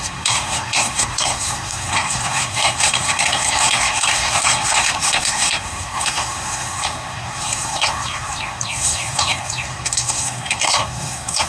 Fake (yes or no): yes